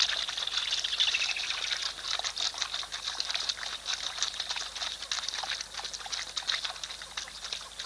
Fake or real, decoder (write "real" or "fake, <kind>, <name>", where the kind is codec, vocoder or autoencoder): real